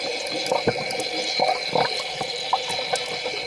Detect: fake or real real